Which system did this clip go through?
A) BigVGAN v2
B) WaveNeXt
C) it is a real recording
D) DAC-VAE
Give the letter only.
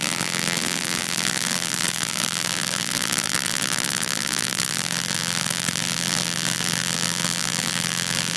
A